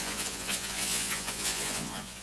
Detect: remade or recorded remade